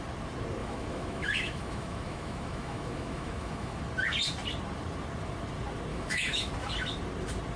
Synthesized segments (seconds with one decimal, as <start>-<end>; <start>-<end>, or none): 0.6-3.8; 5.9-6.5